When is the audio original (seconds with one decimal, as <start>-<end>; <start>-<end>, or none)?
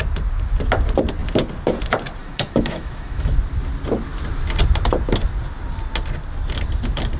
0.0-2.2; 3.3-7.2